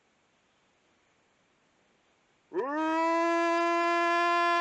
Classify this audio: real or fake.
real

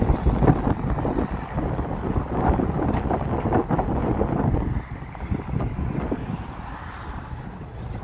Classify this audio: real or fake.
real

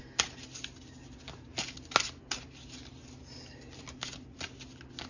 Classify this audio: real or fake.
real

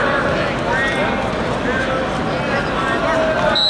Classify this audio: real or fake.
real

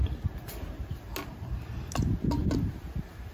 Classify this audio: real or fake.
real